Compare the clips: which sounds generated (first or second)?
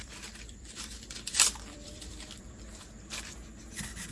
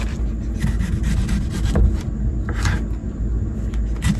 first